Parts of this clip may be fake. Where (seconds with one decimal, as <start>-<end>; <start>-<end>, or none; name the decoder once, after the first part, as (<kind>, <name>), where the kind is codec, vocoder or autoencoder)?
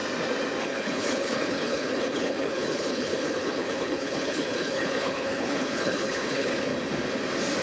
0.6-6.7 (codec, HILCodec)